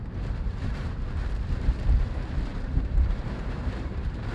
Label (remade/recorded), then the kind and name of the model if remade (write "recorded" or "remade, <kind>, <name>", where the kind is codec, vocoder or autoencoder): remade, vocoder, BigVGAN v2